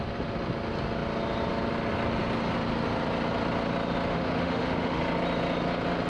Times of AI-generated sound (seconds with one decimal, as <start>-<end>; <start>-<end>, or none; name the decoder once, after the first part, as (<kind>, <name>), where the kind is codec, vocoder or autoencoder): 4.1-5.0 (autoencoder, DAC-VAE)